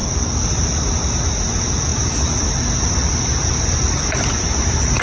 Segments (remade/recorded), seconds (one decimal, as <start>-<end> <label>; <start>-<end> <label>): 0.0-5.0 recorded